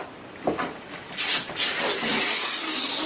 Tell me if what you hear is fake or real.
real